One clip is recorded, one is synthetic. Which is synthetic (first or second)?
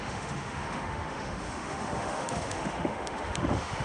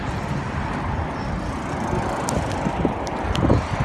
first